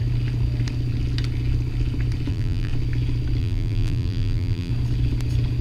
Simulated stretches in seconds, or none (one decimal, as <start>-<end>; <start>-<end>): 2.3-2.7; 3.4-4.7